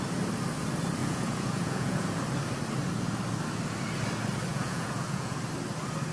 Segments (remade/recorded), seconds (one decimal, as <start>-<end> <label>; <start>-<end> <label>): 0.0-1.0 recorded; 1.0-2.1 remade; 2.1-4.5 recorded; 4.5-5.4 remade; 5.4-6.1 recorded